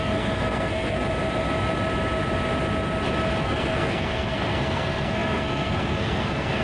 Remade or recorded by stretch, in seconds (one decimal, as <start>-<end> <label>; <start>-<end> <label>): 0.0-1.0 remade; 1.0-3.4 recorded; 3.4-6.6 remade

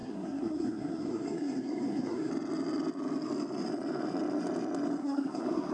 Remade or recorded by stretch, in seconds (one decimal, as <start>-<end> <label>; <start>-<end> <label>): 0.0-2.3 remade; 2.3-5.0 recorded; 5.0-5.7 remade

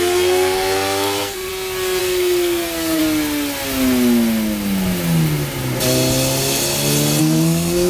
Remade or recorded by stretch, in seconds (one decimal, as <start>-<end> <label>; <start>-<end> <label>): 0.0-1.5 remade; 1.5-2.0 recorded; 2.0-3.0 remade; 3.0-7.2 recorded; 7.2-7.9 remade

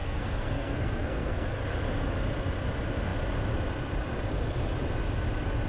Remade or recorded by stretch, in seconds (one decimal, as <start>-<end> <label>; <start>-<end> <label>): 0.0-1.6 remade; 1.6-5.7 recorded

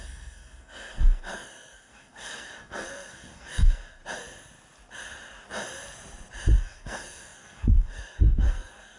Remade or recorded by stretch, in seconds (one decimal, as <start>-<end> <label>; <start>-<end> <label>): 0.0-4.0 remade; 4.0-6.6 recorded; 6.6-9.0 remade

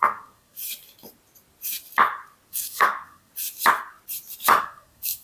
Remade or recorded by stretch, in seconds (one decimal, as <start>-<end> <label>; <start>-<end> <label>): 0.0-0.6 remade; 0.6-2.5 recorded; 2.5-3.3 remade; 3.3-4.6 recorded; 4.6-5.2 remade

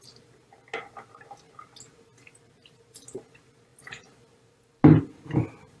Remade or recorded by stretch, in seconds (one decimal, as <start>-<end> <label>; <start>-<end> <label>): 0.0-5.8 recorded